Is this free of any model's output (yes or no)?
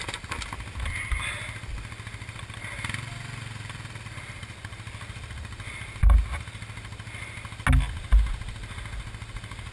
yes